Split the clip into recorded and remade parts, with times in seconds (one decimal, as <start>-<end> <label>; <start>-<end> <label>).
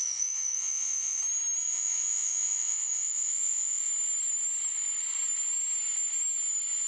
0.0-1.2 remade; 1.2-1.6 recorded; 1.6-3.9 remade; 3.9-6.9 recorded